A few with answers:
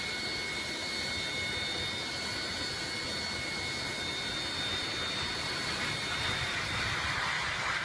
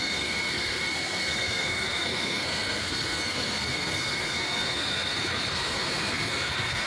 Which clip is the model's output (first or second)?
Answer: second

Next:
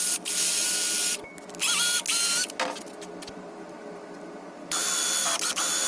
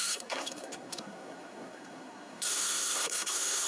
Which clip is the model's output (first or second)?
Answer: second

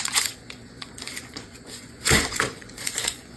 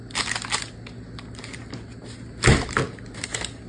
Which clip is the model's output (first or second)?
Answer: first